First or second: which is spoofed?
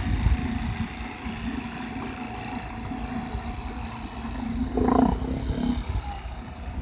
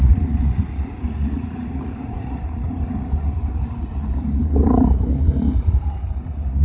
second